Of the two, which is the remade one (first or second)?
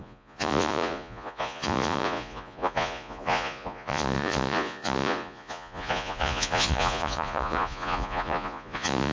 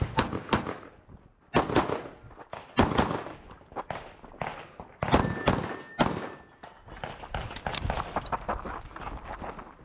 first